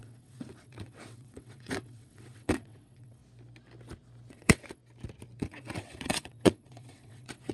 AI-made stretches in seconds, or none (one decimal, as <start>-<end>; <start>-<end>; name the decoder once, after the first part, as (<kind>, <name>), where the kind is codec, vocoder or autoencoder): 0.0-3.2 (vocoder, WaveNeXt); 4.3-4.8; 5.4-7.5